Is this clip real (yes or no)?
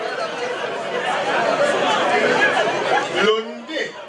yes